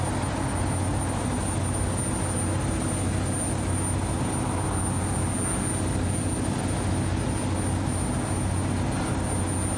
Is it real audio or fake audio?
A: real